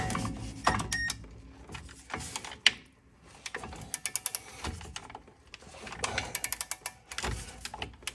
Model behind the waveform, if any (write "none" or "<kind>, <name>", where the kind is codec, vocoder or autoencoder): none